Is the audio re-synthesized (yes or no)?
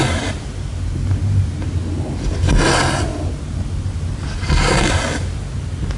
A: no